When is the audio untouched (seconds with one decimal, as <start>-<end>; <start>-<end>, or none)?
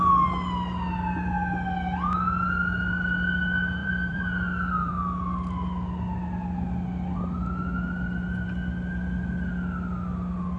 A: 0.0-3.8; 4.9-10.6